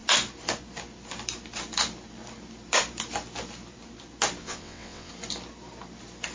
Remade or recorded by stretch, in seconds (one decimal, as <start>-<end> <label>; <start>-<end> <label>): 0.0-4.4 recorded; 4.4-5.1 remade; 5.1-6.3 recorded